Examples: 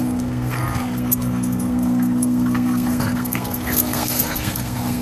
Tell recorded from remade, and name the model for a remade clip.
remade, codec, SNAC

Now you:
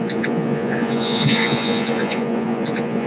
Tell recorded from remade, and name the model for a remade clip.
remade, vocoder, Vocos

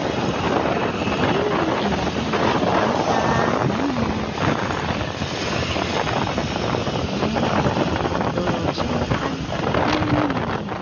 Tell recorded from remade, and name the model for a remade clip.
recorded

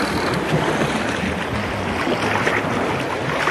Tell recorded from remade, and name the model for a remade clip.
recorded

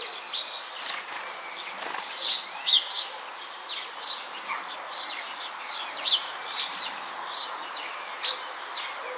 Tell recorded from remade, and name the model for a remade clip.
recorded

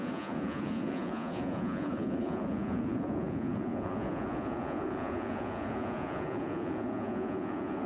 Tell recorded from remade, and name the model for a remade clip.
remade, vocoder, Vocos